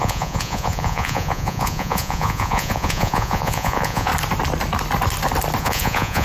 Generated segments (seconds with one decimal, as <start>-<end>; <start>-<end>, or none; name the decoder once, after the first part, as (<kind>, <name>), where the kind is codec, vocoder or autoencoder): 0.0-4.1 (vocoder, Vocos); 5.6-6.2